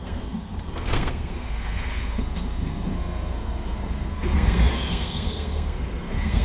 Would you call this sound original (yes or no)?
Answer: no